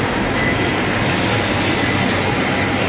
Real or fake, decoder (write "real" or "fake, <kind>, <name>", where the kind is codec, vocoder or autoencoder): real